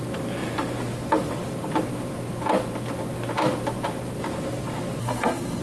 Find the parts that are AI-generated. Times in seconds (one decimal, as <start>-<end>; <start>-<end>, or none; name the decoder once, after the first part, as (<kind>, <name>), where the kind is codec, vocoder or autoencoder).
5.0-5.6 (codec, SNAC)